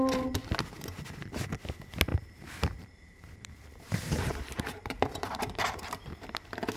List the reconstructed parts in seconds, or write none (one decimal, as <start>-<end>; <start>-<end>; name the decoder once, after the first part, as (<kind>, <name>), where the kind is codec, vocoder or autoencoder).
2.1-6.2 (vocoder, BigVGAN v2)

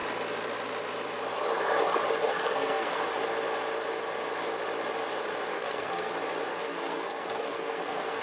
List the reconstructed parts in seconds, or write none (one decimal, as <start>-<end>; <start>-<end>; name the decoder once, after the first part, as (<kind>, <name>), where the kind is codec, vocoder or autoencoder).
2.3-3.0 (codec, SNAC); 5.5-6.1; 6.5-8.2

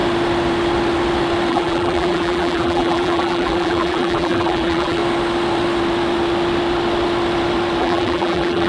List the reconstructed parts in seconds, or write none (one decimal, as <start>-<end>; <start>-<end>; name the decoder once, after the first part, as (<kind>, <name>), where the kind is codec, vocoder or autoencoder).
1.5-5.0 (vocoder, BigVGAN v2); 7.8-8.7